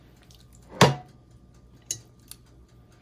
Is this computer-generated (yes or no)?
no